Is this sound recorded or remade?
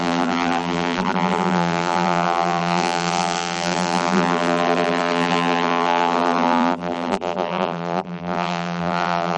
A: remade